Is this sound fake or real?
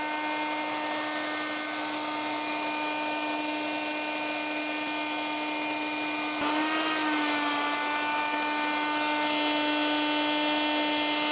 real